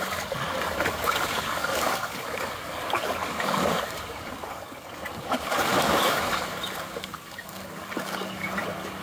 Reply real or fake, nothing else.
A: fake